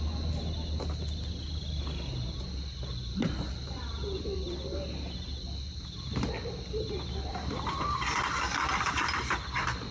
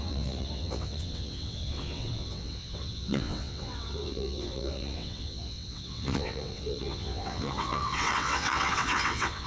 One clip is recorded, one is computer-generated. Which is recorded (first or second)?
first